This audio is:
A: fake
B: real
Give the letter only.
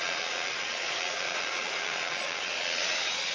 A